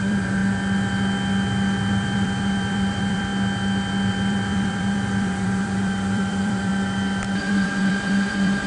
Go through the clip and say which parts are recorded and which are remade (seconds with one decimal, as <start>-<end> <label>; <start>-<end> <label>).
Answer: 0.0-0.4 remade; 0.4-1.9 recorded; 1.9-3.3 remade; 3.3-4.1 recorded; 4.1-6.7 remade; 6.7-7.4 recorded; 7.4-8.7 remade